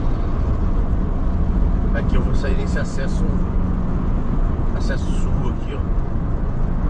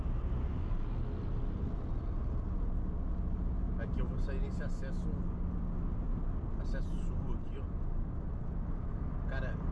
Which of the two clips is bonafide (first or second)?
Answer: second